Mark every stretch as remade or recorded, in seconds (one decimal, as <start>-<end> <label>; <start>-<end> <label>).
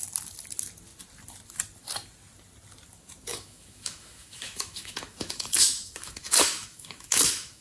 0.0-3.3 recorded; 3.3-7.6 remade